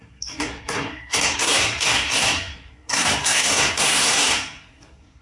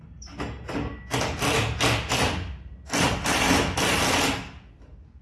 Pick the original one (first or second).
second